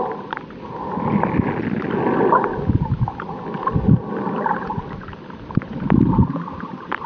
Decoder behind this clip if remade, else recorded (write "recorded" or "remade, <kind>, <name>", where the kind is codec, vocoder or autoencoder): recorded